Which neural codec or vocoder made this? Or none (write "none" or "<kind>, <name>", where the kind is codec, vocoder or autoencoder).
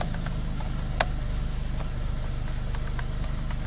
none